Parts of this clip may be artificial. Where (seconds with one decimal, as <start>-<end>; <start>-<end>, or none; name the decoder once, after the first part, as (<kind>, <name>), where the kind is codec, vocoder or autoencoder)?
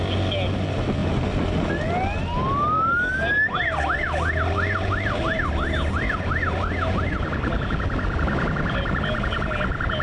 none